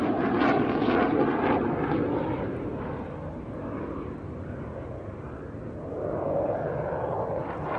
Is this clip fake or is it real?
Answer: real